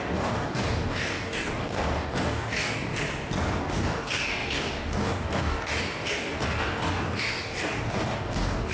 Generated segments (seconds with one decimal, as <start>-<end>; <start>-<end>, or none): 0.0-2.9; 3.6-8.7